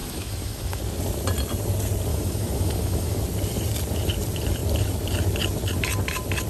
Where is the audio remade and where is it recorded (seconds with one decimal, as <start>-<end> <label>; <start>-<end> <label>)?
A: 0.0-0.8 remade; 0.8-2.1 recorded; 2.1-3.2 remade; 3.2-6.5 recorded